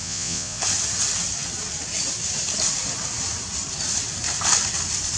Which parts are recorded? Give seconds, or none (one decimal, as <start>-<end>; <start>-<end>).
0.6-5.2